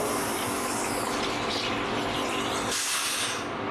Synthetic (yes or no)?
no